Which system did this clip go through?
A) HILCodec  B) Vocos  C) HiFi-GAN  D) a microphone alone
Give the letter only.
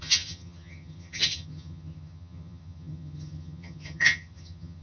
C